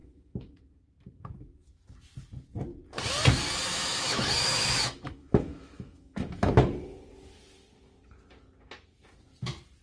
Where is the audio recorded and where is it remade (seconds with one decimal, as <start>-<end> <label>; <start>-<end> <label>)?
0.0-0.6 remade; 0.6-3.7 recorded; 3.7-6.5 remade; 6.5-9.8 recorded